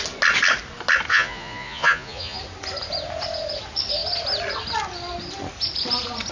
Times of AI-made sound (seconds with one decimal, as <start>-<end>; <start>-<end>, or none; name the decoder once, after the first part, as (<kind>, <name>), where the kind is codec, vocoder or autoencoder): 1.1-2.4 (vocoder, Vocos)